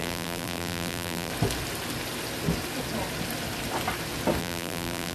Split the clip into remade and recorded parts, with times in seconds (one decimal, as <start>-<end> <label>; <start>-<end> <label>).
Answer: 0.0-1.3 remade; 1.3-4.4 recorded; 4.4-5.1 remade